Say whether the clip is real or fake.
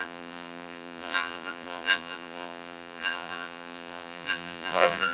fake